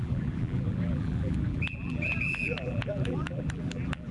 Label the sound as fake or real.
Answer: fake